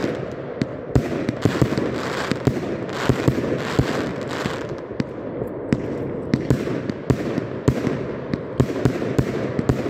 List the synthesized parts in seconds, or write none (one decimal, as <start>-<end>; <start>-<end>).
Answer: 0.0-2.3; 4.1-7.0